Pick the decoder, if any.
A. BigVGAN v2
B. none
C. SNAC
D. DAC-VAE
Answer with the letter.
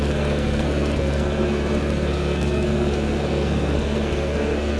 C